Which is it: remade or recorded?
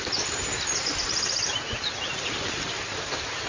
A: recorded